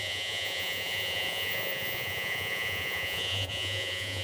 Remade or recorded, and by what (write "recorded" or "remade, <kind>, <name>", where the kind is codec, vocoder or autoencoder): remade, vocoder, Vocos